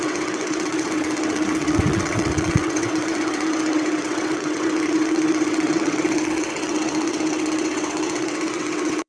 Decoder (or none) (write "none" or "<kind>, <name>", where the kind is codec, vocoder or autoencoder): vocoder, WaveNeXt